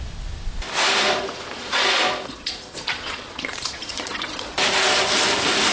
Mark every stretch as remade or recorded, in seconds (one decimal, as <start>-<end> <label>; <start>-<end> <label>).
0.0-1.1 recorded; 1.1-4.5 remade; 4.5-5.7 recorded